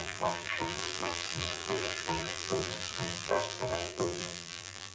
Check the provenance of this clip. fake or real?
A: fake